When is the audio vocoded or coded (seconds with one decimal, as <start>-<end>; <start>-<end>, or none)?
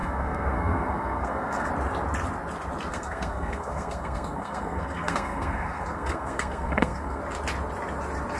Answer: 0.0-1.7; 2.9-7.2